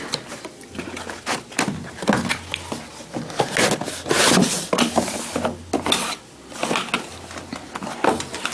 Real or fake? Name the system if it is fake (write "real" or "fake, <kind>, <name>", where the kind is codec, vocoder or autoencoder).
real